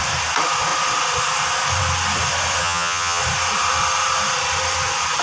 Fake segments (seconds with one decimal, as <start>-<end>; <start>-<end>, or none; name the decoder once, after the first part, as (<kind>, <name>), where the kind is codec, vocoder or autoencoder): 2.6-3.2 (vocoder, HiFi-GAN)